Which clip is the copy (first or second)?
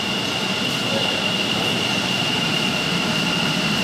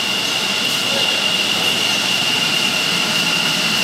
first